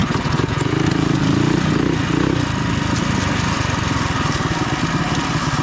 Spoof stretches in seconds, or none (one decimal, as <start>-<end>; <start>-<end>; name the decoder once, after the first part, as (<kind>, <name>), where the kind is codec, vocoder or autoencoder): 0.0-0.7 (vocoder, Vocos)